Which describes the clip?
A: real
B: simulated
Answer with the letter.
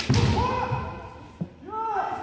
A